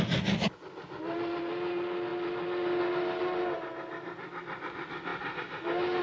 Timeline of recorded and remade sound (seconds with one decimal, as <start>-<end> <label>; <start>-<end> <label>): 0.0-6.0 recorded